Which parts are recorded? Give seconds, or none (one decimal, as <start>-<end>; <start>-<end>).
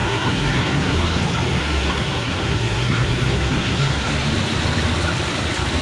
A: 1.2-1.6; 4.1-5.8